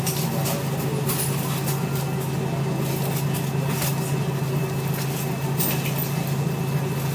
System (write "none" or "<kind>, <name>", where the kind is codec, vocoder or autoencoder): none